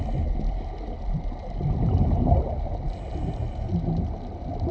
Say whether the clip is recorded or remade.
recorded